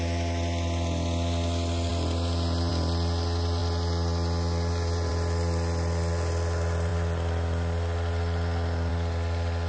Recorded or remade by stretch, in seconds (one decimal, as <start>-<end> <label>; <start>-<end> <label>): 0.0-9.7 recorded